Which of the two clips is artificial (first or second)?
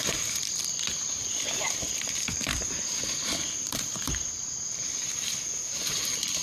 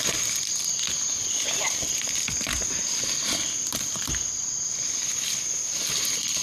first